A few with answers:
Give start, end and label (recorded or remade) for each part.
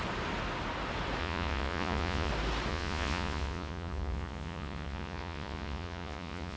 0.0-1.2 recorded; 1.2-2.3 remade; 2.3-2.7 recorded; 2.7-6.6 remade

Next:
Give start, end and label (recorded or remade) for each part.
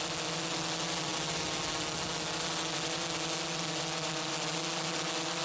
0.0-5.4 recorded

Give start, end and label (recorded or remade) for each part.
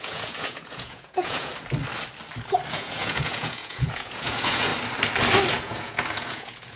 0.0-1.5 remade; 1.5-2.7 recorded; 2.7-4.7 remade; 4.7-5.5 recorded; 5.5-6.8 remade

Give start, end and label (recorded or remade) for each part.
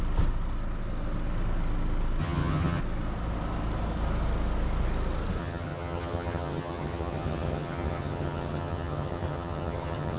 0.0-2.2 recorded; 2.2-2.8 remade; 2.8-5.4 recorded; 5.4-10.2 remade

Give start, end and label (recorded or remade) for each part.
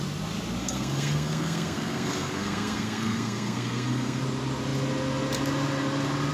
0.0-0.6 recorded; 0.6-4.2 remade; 4.2-6.3 recorded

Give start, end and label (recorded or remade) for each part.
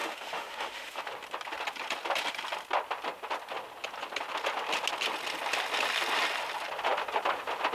0.0-1.0 remade; 1.0-7.7 recorded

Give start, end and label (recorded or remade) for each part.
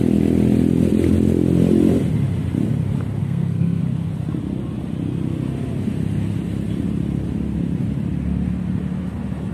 0.0-3.2 recorded; 3.2-3.8 remade; 3.8-9.5 recorded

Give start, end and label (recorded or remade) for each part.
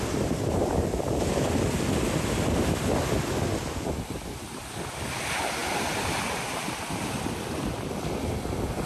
0.0-8.9 recorded